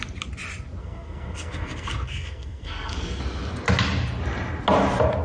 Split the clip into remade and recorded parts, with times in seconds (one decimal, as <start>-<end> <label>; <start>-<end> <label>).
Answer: 0.0-0.8 recorded; 0.8-3.2 remade; 3.2-5.2 recorded